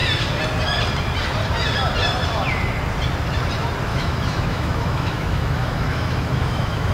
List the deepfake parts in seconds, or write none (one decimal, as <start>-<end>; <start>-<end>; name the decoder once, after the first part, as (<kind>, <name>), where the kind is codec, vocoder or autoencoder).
3.9-6.9 (autoencoder, DAC-VAE)